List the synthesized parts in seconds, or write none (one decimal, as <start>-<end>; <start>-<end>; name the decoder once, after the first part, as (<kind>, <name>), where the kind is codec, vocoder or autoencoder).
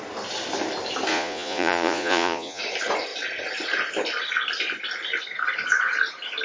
1.1-2.6 (vocoder, Vocos)